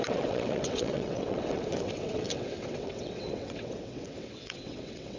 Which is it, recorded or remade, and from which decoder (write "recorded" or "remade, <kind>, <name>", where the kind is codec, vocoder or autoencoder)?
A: remade, vocoder, WaveNeXt